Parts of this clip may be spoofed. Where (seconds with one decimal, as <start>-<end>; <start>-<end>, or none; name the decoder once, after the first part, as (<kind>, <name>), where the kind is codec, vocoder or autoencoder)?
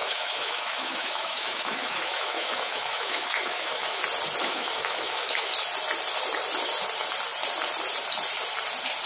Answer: 0.0-4.0 (autoencoder, DAC-VAE); 4.4-5.5